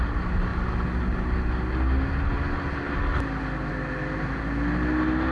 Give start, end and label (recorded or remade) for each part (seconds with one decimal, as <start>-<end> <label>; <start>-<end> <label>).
0.0-5.3 recorded